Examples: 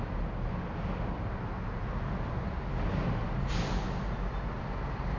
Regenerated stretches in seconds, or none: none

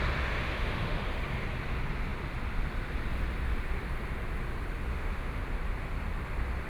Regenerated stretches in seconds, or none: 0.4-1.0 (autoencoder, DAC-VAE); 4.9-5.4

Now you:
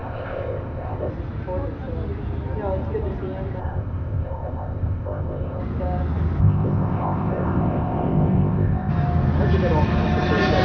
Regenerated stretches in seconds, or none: 0.0-1.1 (codec, ZipCodec); 3.6-5.6; 6.4-8.9

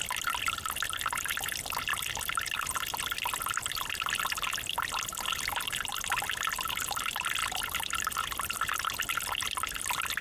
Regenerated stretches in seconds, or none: none

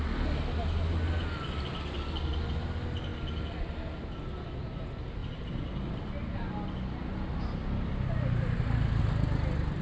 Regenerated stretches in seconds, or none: none

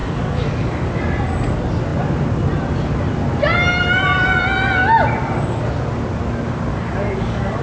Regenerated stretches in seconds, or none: 0.0-1.0 (codec, DAC); 6.7-7.6

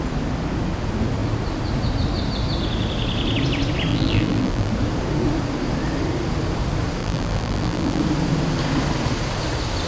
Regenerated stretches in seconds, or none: 3.9-4.7 (vocoder, BigVGAN v2); 7.0-8.0

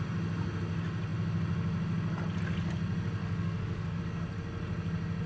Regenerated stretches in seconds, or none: 3.2-4.0 (codec, DAC)